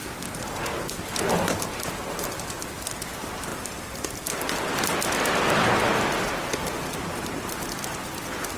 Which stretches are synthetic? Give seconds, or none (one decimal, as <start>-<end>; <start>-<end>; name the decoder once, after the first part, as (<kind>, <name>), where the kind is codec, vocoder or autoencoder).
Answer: none